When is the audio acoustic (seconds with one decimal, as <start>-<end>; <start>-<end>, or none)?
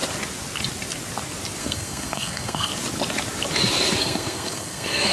0.0-1.6; 2.7-4.0